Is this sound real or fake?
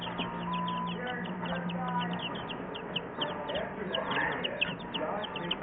real